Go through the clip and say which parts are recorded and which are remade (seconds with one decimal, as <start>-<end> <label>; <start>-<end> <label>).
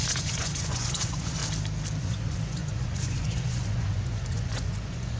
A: 0.0-1.4 remade; 1.4-2.0 recorded; 2.0-5.2 remade